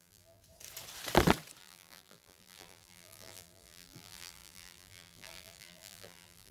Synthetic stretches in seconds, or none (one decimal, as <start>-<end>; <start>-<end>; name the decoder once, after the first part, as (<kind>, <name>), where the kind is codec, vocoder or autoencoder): 0.0-0.4 (vocoder, BigVGAN v2); 1.6-6.5